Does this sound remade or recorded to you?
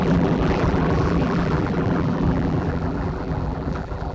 remade